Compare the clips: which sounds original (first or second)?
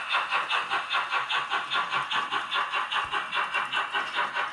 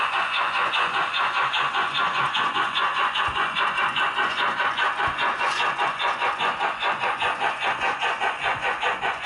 first